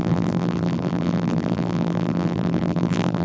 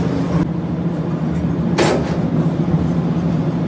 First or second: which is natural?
second